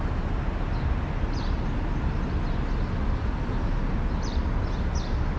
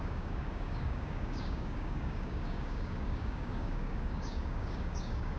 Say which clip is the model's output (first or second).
second